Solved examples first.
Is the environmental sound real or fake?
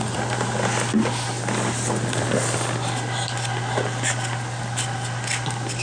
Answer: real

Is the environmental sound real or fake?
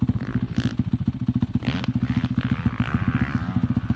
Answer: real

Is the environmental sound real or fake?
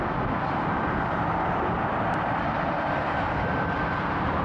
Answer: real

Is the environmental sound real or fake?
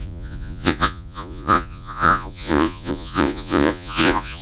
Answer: fake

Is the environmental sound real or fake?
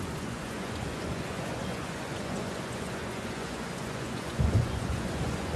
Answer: fake